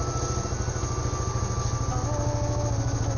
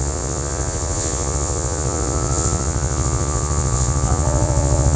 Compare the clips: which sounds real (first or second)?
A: first